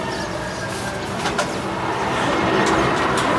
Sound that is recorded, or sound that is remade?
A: recorded